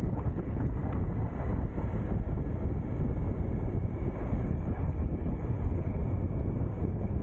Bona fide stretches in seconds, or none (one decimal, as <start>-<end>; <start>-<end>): 0.8-4.2; 6.0-6.8